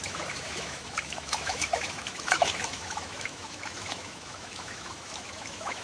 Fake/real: fake